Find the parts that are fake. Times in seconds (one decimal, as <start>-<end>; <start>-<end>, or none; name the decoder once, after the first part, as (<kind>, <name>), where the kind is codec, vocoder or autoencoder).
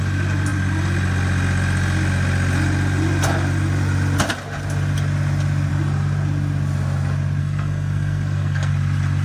7.4-8.7 (codec, SNAC)